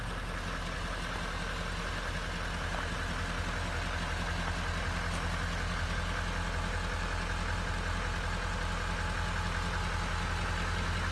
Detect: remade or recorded recorded